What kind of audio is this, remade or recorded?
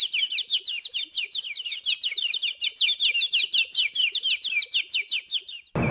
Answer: recorded